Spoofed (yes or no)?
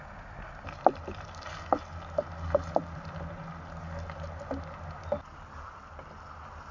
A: no